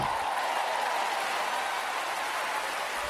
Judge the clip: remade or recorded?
recorded